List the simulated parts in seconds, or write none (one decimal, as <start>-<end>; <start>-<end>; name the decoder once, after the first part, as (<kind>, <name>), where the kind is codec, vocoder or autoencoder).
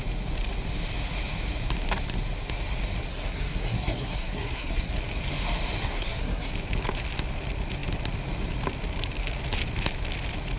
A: 3.1-4.9 (codec, SNAC); 5.8-6.5